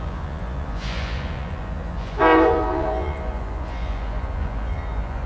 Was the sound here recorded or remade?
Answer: remade